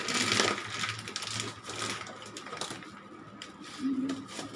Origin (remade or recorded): recorded